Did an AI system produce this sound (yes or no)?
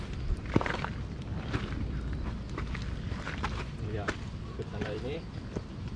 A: yes